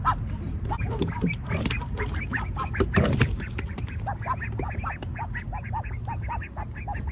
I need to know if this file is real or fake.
real